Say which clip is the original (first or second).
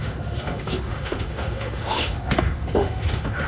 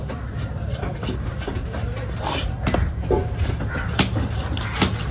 second